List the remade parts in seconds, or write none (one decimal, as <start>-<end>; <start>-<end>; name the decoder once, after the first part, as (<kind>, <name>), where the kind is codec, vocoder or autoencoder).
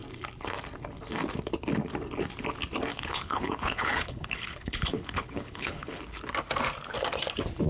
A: 2.9-6.0 (codec, HILCodec)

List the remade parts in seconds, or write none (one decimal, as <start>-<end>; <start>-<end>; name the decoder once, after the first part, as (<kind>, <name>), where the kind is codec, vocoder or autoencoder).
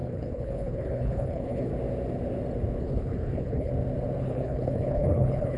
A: 0.0-1.7 (codec, HILCodec); 2.8-3.7; 4.2-5.6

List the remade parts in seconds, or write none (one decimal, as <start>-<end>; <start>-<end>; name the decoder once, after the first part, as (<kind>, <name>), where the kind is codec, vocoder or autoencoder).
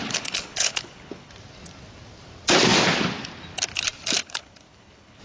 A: 0.0-1.3 (codec, HILCodec); 4.2-5.2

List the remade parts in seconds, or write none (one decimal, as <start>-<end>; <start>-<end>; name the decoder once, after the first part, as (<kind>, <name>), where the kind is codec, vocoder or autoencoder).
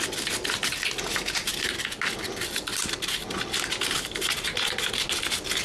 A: none